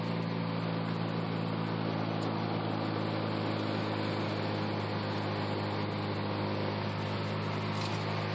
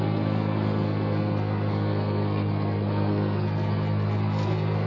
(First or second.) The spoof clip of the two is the second